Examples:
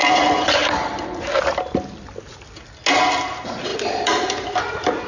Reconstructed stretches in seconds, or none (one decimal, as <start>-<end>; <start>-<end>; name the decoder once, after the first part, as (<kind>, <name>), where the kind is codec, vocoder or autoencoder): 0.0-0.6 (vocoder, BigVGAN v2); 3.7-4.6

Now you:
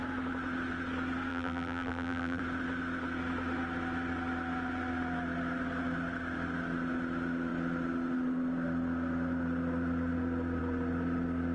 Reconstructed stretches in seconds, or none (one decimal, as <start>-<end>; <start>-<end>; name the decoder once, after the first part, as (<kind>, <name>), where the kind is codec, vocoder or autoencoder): 1.3-2.4 (vocoder, BigVGAN v2)

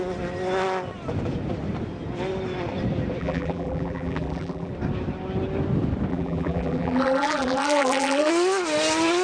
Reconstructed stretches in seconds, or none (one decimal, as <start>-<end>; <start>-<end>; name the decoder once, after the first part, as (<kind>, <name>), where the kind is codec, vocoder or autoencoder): 3.2-4.7 (vocoder, BigVGAN v2); 6.1-8.3

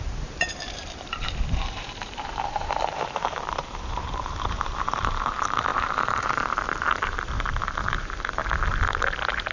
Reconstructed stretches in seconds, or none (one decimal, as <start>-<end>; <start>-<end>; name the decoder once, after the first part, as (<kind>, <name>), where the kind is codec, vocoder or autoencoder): 0.0-8.4 (vocoder, BigVGAN v2)